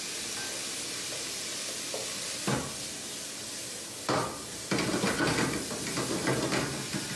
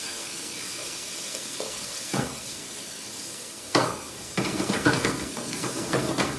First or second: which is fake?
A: second